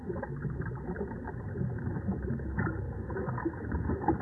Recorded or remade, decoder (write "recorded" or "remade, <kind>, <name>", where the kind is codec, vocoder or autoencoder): recorded